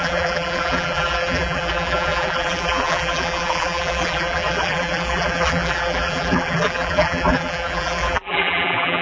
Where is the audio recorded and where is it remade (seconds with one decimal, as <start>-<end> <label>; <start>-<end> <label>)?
0.0-9.0 remade